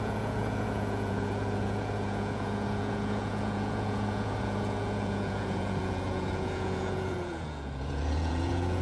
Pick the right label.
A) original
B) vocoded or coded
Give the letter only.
B